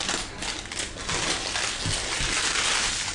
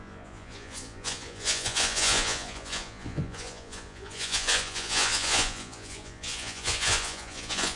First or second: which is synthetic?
second